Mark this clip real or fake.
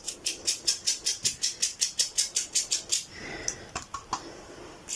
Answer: real